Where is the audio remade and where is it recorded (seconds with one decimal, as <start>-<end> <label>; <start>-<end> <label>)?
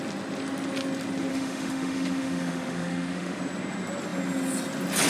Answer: 0.0-1.3 recorded; 1.3-3.4 remade; 3.4-5.1 recorded